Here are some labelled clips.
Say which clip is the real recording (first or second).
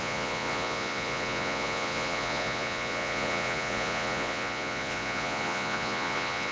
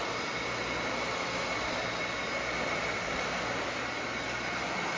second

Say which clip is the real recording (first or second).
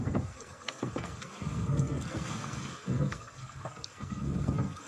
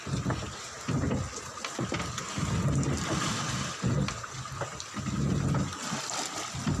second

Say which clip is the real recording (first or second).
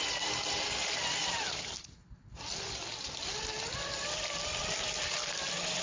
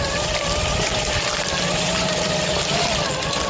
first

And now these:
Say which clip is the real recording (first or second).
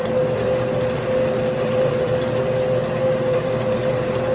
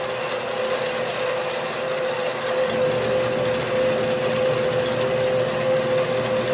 second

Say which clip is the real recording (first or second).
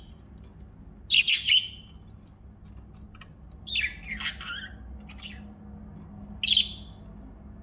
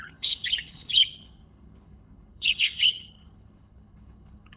first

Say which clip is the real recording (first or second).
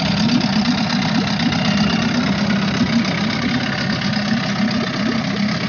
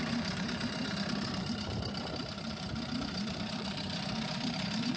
first